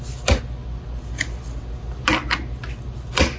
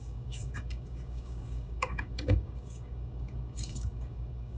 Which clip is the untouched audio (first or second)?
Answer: first